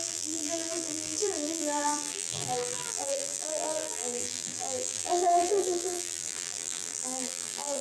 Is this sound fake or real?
fake